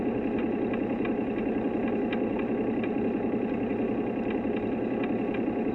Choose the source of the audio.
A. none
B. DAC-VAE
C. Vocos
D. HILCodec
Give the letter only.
A